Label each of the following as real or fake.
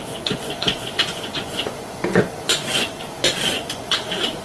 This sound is fake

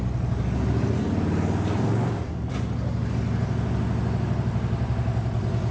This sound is real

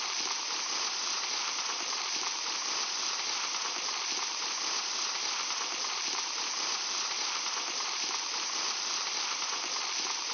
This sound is fake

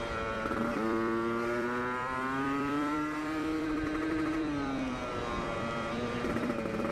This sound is fake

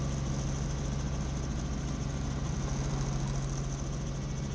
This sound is real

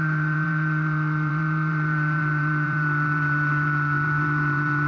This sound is fake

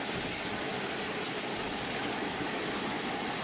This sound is real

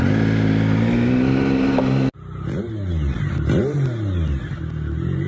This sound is real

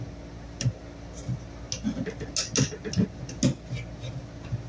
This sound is real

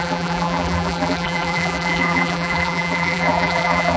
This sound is fake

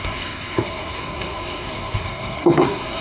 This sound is fake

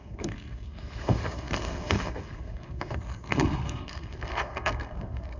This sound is fake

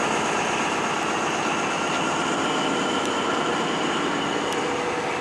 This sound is real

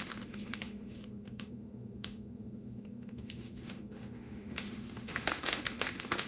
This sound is fake